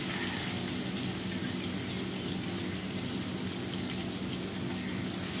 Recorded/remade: recorded